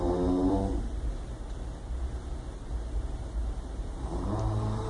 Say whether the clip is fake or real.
fake